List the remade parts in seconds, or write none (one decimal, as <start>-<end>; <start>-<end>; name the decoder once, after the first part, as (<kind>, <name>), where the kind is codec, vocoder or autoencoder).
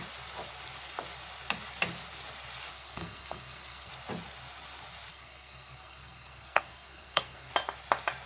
2.7-3.9 (codec, SNAC); 5.1-7.5